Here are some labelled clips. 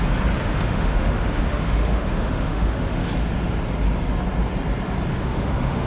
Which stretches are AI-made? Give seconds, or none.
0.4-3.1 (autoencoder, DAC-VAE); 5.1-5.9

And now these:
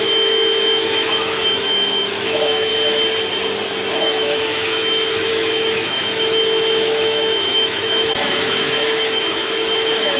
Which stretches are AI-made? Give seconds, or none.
0.0-2.7 (autoencoder, DAC-VAE); 3.9-10.2